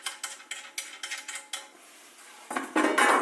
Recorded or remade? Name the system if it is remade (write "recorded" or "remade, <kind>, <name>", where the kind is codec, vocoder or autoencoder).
recorded